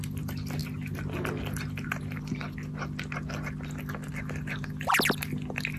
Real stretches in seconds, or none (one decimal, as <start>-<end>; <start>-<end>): 0.0-5.8